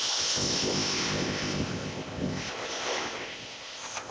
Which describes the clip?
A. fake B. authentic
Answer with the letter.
A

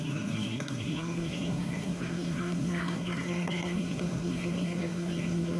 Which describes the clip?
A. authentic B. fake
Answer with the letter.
B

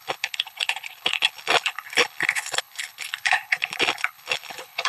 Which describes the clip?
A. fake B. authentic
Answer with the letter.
A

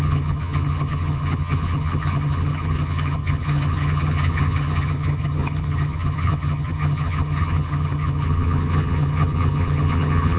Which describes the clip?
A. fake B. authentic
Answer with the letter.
A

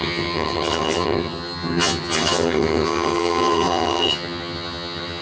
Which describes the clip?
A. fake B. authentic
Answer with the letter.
A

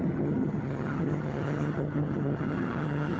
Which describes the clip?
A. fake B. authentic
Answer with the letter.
A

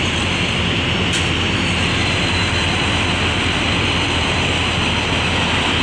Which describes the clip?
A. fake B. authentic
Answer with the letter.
B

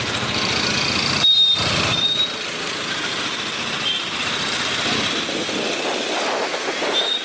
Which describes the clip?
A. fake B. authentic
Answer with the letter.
B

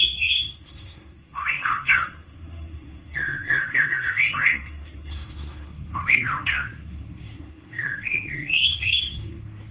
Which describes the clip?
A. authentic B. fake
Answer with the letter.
B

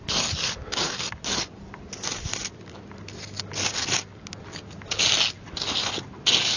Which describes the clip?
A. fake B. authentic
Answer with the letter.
B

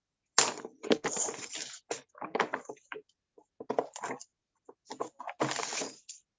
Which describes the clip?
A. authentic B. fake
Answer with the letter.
A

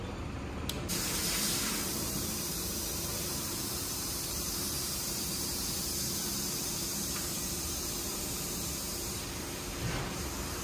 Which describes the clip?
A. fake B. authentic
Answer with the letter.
A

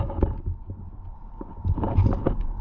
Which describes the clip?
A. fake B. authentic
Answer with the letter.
B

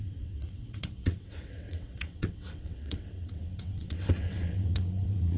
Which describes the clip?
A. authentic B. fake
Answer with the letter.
B